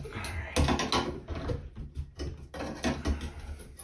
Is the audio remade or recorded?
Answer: recorded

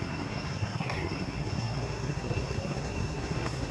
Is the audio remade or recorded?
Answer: remade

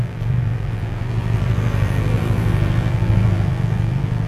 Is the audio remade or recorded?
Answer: remade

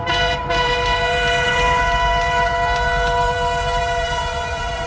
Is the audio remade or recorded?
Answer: remade